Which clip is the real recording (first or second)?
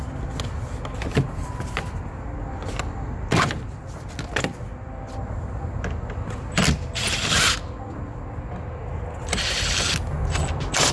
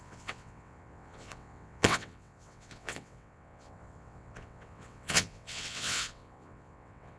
first